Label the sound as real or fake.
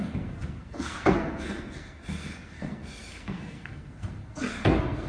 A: fake